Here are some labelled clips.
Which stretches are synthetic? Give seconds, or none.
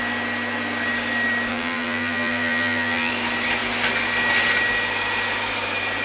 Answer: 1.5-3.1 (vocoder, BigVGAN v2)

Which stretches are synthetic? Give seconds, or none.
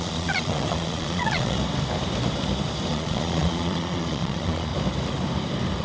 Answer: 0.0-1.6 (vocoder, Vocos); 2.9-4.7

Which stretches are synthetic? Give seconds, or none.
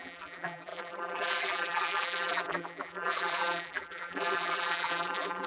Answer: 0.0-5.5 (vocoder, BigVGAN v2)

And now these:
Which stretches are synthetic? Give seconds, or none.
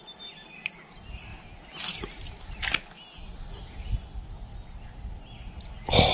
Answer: none